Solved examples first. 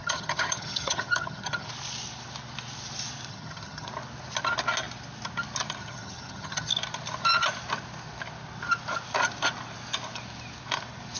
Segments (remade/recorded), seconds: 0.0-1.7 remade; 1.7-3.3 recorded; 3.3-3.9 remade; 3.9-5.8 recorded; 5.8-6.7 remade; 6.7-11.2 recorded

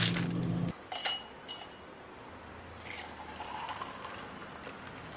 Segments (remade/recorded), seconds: 0.0-5.2 recorded

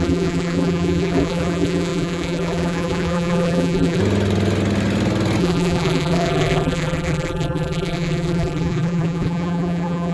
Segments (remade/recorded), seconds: 0.0-4.0 remade; 4.0-5.4 recorded; 5.4-10.1 remade